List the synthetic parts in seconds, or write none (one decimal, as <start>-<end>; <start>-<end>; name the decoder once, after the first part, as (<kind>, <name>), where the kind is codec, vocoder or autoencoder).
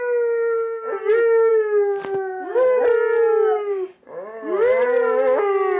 none